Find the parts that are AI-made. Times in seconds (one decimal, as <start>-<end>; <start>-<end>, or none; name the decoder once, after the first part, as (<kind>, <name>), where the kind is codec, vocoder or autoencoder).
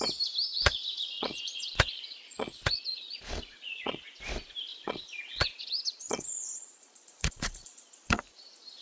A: 0.5-4.0 (vocoder, Vocos); 4.7-8.2